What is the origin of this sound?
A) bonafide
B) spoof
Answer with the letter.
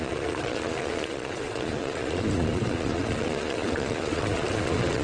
B